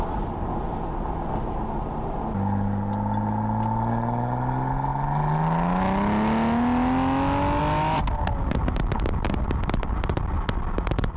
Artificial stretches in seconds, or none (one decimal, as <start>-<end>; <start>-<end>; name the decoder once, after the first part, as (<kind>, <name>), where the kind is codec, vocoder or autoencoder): none